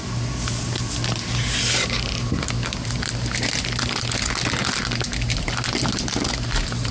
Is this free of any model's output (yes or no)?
yes